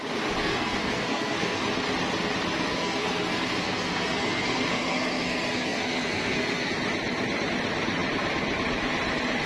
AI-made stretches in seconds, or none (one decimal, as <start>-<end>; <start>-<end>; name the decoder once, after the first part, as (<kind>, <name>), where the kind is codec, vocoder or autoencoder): 0.4-1.6 (codec, SNAC); 2.7-6.7